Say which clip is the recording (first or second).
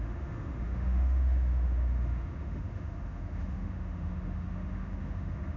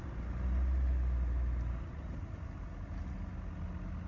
second